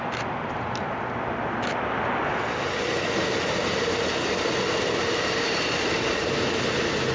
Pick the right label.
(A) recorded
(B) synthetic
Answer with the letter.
A